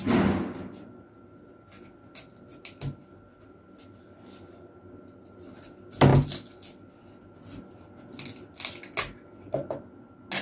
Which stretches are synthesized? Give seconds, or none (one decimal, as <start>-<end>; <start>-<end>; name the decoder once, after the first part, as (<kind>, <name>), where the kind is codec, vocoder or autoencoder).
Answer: none